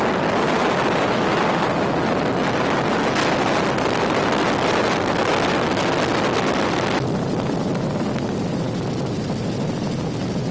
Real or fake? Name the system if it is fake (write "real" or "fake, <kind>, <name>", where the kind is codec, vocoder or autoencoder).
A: real